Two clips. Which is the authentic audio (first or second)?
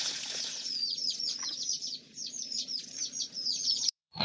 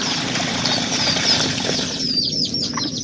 second